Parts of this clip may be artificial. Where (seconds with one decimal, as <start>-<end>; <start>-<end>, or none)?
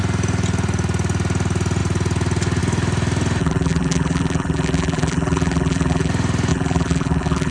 3.4-6.1; 6.5-7.5